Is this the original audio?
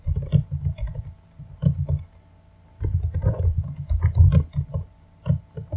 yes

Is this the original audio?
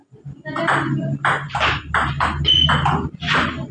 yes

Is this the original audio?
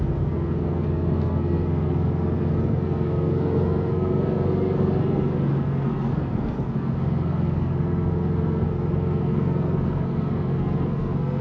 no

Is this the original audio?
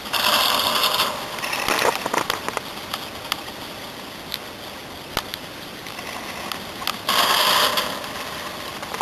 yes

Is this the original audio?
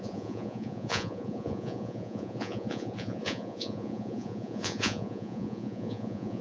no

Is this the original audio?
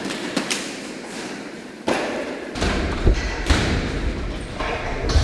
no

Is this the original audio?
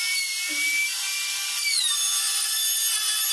yes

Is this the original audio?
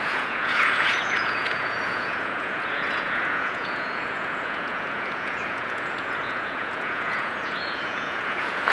no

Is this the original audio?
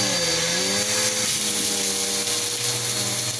yes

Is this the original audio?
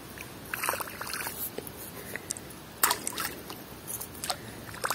yes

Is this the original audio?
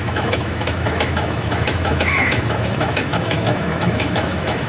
no